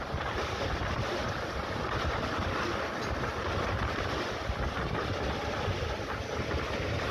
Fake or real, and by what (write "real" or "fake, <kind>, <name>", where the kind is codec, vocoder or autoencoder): real